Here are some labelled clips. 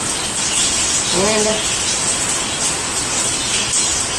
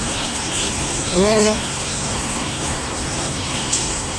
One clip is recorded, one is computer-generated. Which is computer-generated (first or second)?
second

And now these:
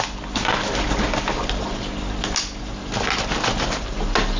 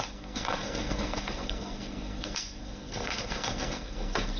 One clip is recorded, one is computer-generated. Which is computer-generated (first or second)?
second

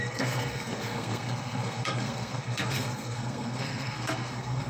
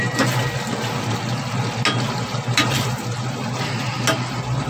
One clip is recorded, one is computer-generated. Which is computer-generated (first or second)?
first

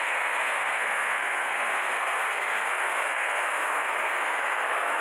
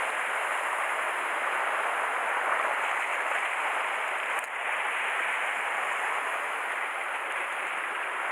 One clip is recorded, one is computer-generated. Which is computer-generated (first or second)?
first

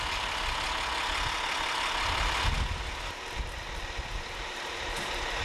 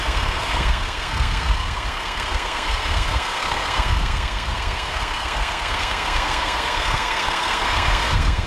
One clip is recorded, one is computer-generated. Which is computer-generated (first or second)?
second